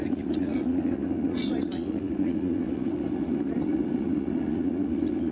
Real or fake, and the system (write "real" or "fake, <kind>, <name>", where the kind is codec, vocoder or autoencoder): fake, vocoder, Vocos